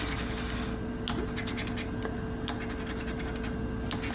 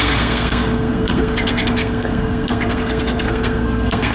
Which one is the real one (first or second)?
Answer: first